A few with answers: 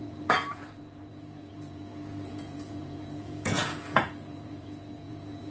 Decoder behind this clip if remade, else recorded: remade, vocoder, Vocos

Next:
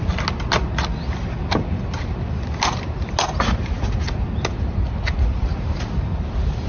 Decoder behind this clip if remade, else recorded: recorded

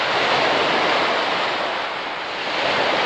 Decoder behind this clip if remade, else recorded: recorded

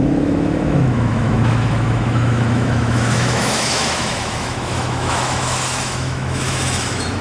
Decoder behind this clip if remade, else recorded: remade, autoencoder, DAC-VAE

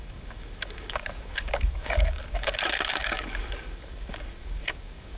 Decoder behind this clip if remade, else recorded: remade, codec, DAC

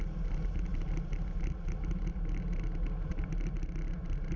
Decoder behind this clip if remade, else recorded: recorded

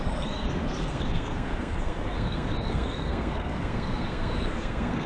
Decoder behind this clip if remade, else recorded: remade, codec, SNAC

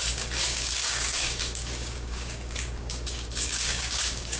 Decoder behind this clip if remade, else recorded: remade, codec, DAC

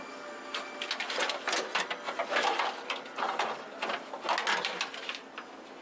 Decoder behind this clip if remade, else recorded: recorded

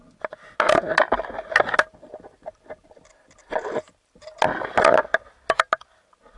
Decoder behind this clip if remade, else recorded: recorded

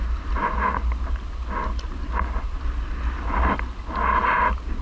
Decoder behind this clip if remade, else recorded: recorded